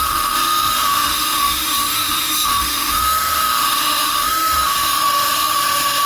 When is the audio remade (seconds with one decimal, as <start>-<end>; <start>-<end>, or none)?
0.0-6.1